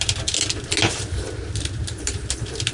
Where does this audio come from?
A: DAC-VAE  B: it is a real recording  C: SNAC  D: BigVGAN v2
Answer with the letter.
B